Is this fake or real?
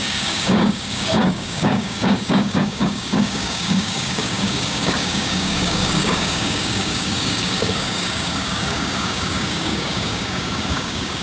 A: fake